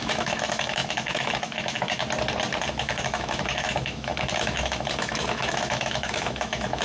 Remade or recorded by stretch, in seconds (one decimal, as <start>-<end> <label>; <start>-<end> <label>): 0.0-2.0 remade; 2.0-2.6 recorded; 2.6-6.8 remade